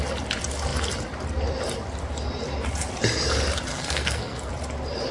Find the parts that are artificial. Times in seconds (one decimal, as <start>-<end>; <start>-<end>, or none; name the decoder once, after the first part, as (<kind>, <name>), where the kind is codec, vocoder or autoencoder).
3.7-4.5 (codec, SNAC)